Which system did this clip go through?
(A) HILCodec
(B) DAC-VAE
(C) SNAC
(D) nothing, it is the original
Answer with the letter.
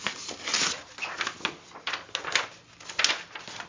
D